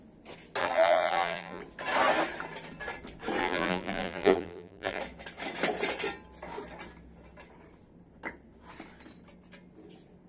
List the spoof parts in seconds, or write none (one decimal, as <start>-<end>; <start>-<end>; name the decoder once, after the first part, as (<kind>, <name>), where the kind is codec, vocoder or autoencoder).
0.6-1.6 (vocoder, BigVGAN v2); 3.4-5.0